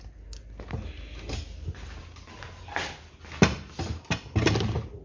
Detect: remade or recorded recorded